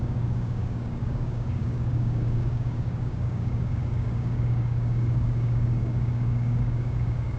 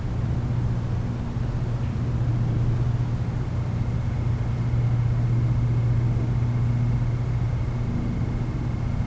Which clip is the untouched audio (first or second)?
second